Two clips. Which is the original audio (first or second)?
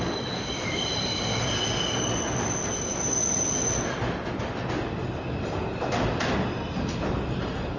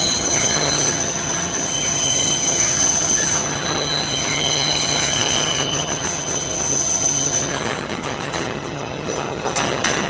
first